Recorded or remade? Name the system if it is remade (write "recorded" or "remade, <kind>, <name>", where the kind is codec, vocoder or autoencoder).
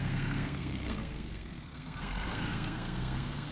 remade, codec, SNAC